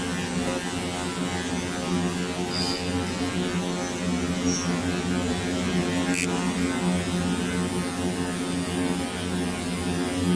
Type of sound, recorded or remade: recorded